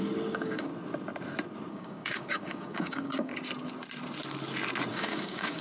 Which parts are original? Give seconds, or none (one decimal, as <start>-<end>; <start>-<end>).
0.7-1.7; 3.3-4.9